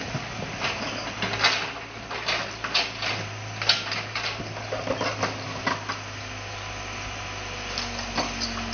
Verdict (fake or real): real